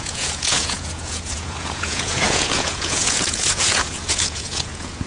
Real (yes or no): no